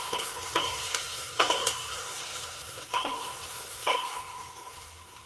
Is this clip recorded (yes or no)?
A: no